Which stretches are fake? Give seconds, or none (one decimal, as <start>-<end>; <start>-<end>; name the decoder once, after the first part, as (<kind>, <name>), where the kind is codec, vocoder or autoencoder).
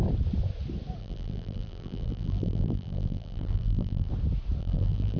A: 1.0-4.1 (vocoder, BigVGAN v2); 4.6-5.2